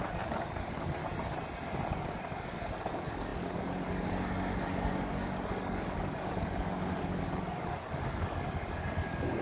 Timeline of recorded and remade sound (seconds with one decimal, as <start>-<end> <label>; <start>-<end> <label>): 0.0-1.0 remade; 1.0-1.9 recorded; 1.9-9.4 remade

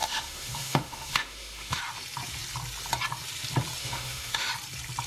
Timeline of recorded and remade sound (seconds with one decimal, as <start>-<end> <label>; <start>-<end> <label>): 0.0-1.8 remade; 1.8-3.8 recorded; 3.8-4.5 remade; 4.5-5.1 recorded

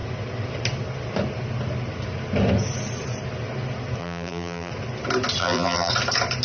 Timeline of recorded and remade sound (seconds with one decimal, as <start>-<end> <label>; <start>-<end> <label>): 0.0-4.0 recorded; 4.0-4.7 remade; 4.7-5.4 recorded; 5.4-5.9 remade; 5.9-6.4 recorded

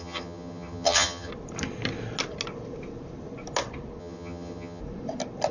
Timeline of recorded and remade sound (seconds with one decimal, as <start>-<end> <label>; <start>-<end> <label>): 0.0-1.3 remade; 1.3-4.0 recorded; 4.0-4.8 remade; 4.8-5.5 recorded

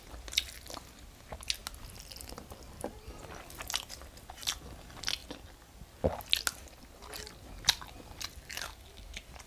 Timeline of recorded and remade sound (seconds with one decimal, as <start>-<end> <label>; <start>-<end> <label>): 0.0-9.5 recorded

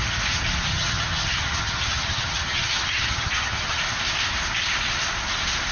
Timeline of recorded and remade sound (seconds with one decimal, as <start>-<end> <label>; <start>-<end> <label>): 0.0-0.7 recorded; 0.7-3.8 remade; 3.8-5.7 recorded

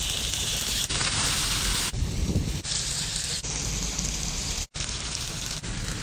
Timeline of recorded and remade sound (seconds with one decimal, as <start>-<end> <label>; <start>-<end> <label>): 0.0-6.0 recorded